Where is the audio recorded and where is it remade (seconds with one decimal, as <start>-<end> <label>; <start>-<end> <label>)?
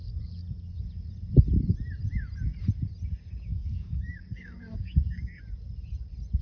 0.0-3.5 recorded; 3.5-5.4 remade; 5.4-6.4 recorded